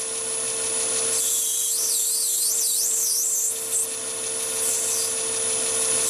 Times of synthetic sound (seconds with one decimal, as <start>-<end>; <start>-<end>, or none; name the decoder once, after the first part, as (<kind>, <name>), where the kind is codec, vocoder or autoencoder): none